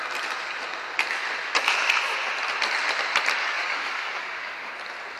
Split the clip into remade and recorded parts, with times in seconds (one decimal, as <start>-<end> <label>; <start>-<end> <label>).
0.0-3.4 recorded; 3.4-4.7 remade; 4.7-5.2 recorded

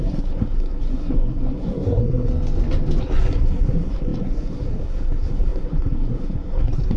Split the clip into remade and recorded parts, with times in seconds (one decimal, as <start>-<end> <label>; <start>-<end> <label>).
0.0-2.3 remade; 2.3-3.0 recorded; 3.0-7.0 remade

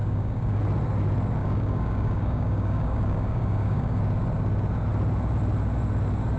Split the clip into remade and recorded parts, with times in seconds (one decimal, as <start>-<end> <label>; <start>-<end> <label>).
0.0-0.6 remade; 0.6-1.4 recorded; 1.4-4.0 remade; 4.0-6.4 recorded

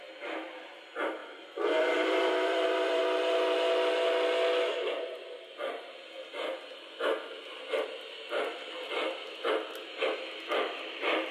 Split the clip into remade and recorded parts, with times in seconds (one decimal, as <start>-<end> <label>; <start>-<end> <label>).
0.0-1.2 recorded; 1.2-3.0 remade; 3.0-11.3 recorded

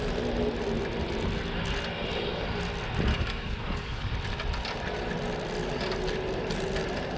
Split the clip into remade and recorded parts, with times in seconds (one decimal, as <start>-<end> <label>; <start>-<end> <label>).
0.0-3.1 recorded; 3.1-4.1 remade; 4.1-7.2 recorded

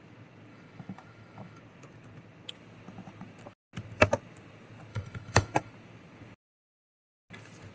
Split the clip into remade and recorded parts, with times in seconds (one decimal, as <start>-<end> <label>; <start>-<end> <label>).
0.0-0.5 recorded; 0.5-1.6 remade; 1.6-4.9 recorded; 4.9-5.7 remade; 5.7-7.7 recorded

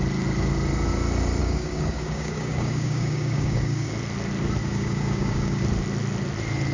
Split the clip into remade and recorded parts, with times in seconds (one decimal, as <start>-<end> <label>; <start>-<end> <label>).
0.0-1.4 recorded; 1.4-3.9 remade; 3.9-4.6 recorded; 4.6-5.6 remade; 5.6-6.7 recorded